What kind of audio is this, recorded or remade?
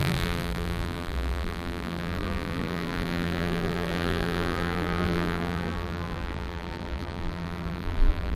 remade